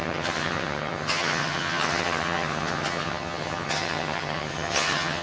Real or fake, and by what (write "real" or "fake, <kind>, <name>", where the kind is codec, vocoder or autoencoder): fake, vocoder, HiFi-GAN